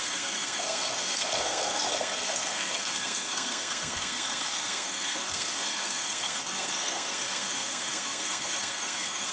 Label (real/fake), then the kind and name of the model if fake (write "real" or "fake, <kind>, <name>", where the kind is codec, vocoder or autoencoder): fake, codec, SNAC